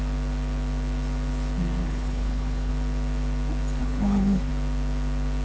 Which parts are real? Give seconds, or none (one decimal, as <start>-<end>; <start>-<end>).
0.0-1.8; 2.7-3.8; 4.5-5.4